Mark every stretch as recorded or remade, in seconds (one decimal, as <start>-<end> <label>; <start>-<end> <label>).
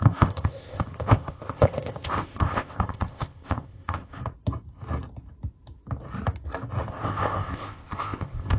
0.0-4.2 remade; 4.2-6.9 recorded; 6.9-8.6 remade